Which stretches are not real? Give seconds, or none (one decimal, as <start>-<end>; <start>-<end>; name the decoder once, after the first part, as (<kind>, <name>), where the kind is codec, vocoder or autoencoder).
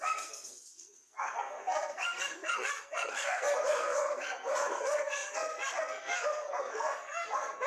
0.0-7.7 (codec, SNAC)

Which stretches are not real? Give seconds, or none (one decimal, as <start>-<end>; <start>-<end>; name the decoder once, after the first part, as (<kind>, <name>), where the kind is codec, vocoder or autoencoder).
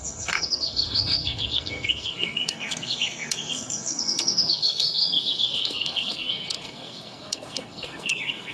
0.0-8.5 (codec, SNAC)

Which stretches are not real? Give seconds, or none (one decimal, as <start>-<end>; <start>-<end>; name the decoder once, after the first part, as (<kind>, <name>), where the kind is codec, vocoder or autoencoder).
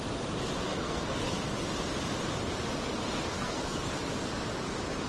0.7-1.2 (codec, SNAC); 3.3-3.9